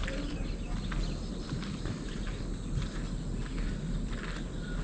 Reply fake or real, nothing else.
real